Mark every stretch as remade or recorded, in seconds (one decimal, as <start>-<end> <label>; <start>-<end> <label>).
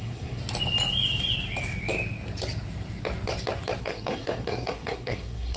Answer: 0.0-0.4 remade; 0.4-3.8 recorded; 3.8-5.6 remade